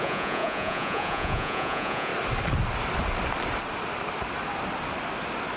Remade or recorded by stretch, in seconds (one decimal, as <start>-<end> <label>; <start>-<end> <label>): 0.0-2.1 remade; 2.1-5.6 recorded